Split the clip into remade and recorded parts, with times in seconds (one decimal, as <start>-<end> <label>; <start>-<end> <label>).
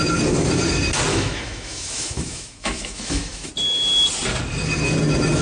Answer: 0.0-1.1 recorded; 1.1-3.5 remade; 3.5-5.4 recorded